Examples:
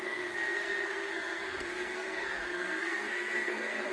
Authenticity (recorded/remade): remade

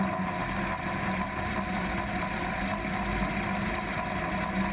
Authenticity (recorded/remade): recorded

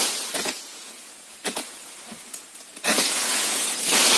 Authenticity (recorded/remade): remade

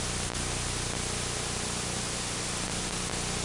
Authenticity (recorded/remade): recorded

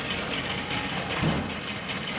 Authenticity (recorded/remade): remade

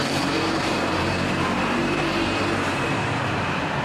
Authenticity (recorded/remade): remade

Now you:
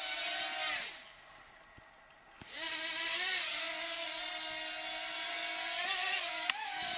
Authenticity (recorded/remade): recorded